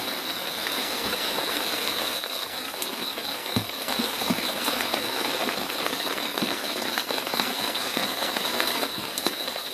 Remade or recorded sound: remade